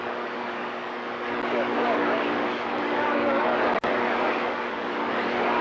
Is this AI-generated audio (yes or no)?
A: yes